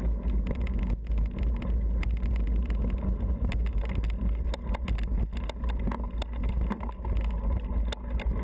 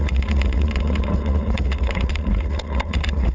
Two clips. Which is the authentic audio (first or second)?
first